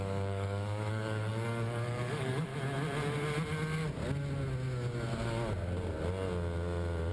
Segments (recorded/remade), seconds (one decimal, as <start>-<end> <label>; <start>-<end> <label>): 0.0-2.5 remade; 2.5-7.1 recorded

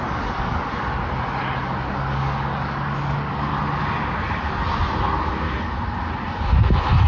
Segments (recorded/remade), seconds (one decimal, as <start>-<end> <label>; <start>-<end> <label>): 0.0-0.5 remade; 0.5-1.6 recorded; 1.6-3.5 remade; 3.5-7.1 recorded

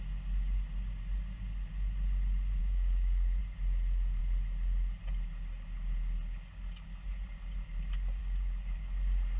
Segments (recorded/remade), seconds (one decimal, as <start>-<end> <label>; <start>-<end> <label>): 0.0-2.6 recorded; 2.6-3.4 remade; 3.4-8.2 recorded; 8.2-8.9 remade; 8.9-9.4 recorded

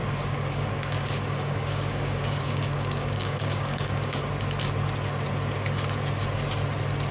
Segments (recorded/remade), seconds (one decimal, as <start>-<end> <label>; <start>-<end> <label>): 0.0-4.3 remade; 4.3-7.1 recorded

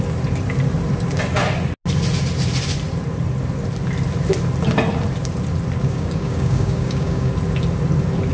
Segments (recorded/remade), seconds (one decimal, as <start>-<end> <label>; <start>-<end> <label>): 0.0-5.8 recorded; 5.8-7.3 remade; 7.3-8.3 recorded

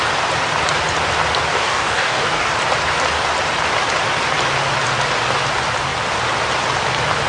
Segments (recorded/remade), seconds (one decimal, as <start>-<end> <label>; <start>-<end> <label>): 0.0-1.5 recorded; 1.5-2.5 remade; 2.5-7.3 recorded

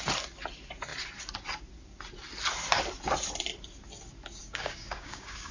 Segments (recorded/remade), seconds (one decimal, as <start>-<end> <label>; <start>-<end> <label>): 0.0-4.4 recorded; 4.4-5.5 remade